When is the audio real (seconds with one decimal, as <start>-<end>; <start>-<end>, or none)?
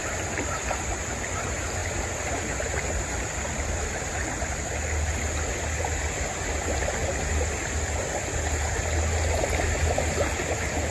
0.0-10.9